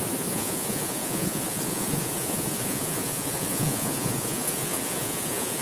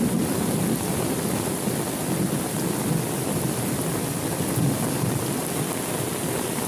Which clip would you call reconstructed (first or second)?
first